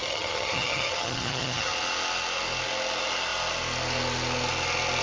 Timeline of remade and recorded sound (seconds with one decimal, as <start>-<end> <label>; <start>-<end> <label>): 0.0-1.7 remade; 1.7-5.0 recorded